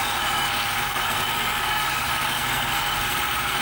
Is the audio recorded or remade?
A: remade